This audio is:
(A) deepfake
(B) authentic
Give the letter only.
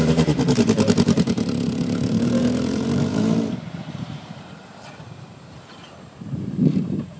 A